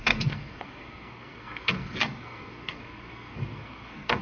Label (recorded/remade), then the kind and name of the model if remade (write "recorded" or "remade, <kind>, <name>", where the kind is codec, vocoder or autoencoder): remade, codec, SNAC